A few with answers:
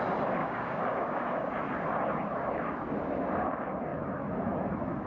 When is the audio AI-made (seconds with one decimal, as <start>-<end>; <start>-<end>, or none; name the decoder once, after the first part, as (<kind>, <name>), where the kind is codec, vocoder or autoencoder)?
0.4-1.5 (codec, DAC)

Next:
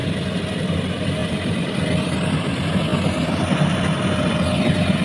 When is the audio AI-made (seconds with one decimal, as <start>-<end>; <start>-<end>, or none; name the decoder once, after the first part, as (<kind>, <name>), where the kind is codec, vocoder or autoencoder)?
1.2-1.8 (vocoder, BigVGAN v2)

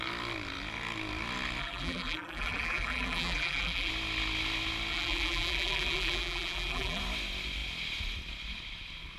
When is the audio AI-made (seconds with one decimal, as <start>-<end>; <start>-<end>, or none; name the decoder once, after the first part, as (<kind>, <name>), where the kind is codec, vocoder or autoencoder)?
1.6-3.9 (vocoder, BigVGAN v2); 4.9-7.0

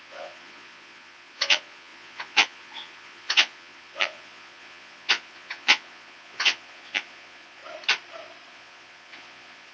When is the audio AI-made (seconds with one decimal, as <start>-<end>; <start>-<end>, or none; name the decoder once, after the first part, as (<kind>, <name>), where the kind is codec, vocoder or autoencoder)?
0.0-7.6 (vocoder, Vocos); 8.5-9.7

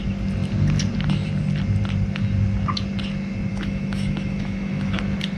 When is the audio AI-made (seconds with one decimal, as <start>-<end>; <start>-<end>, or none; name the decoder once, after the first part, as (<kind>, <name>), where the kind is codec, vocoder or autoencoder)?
3.5-5.0 (autoencoder, DAC-VAE)

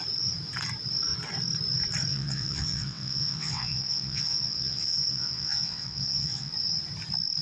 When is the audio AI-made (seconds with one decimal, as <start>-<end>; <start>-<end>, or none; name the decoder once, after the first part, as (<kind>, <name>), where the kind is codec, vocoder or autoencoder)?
2.1-6.5 (vocoder, WaveNeXt)